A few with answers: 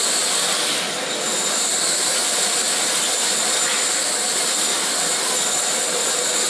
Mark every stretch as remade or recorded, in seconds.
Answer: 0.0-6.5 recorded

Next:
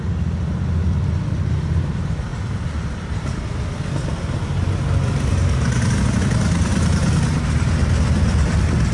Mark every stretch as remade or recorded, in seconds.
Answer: 0.0-2.3 recorded; 2.3-3.4 remade; 3.4-8.9 recorded